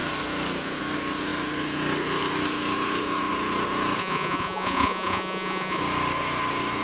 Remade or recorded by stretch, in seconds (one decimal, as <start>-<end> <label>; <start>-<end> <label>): 0.0-4.0 recorded; 4.0-5.8 remade; 5.8-6.8 recorded